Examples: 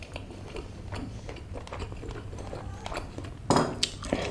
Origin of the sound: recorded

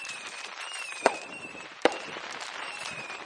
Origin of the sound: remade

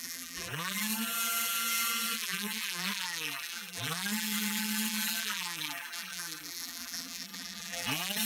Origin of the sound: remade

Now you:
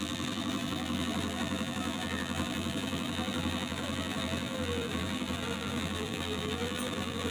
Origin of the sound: remade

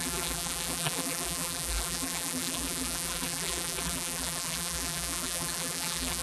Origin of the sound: remade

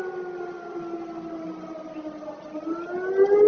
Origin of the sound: recorded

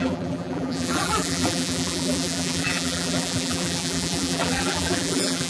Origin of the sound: remade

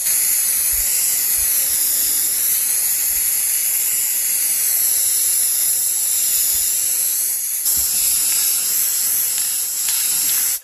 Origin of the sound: remade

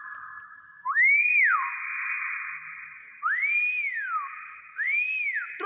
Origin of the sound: recorded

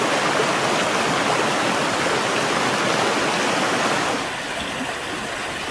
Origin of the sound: recorded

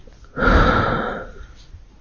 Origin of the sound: recorded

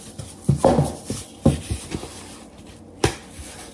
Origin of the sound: remade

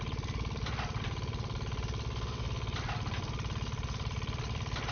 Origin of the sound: recorded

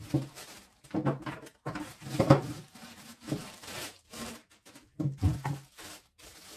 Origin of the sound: remade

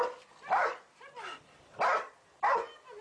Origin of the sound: recorded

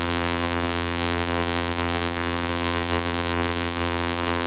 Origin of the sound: remade